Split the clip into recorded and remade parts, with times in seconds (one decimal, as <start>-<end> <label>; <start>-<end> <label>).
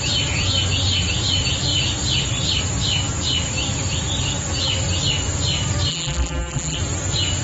0.0-5.9 recorded; 5.9-6.8 remade; 6.8-7.4 recorded